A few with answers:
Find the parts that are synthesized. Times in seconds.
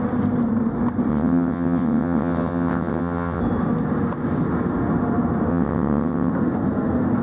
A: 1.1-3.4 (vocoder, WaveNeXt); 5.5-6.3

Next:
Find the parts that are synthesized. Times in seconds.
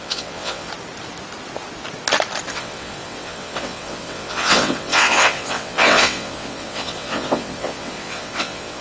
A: 0.0-0.7 (vocoder, WaveNeXt); 2.5-8.8